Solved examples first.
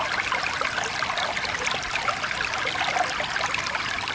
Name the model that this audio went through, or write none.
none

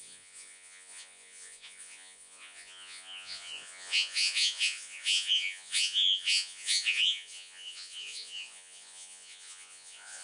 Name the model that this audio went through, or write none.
vocoder, Vocos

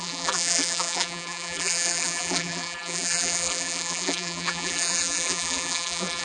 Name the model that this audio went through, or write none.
vocoder, BigVGAN v2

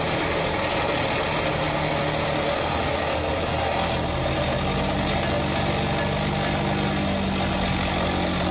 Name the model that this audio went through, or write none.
none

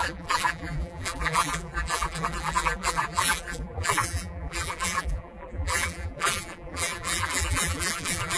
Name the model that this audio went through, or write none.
vocoder, BigVGAN v2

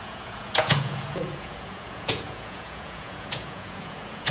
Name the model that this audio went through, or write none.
vocoder, Vocos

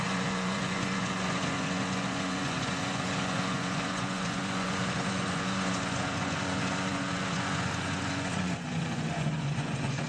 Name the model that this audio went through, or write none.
vocoder, Vocos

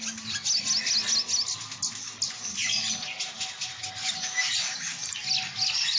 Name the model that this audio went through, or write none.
none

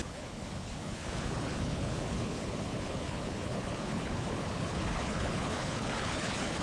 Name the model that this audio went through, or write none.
codec, HILCodec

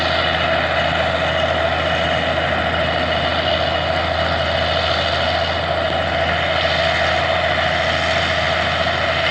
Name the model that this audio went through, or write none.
none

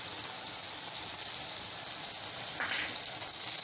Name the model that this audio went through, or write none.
none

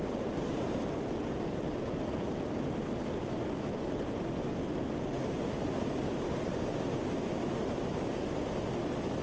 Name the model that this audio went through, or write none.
none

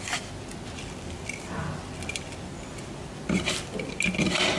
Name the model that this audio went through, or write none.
none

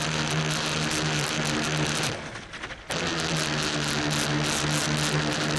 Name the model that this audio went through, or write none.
none